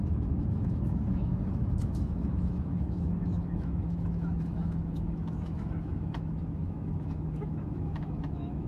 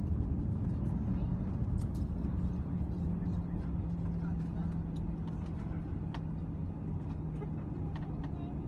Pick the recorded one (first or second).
second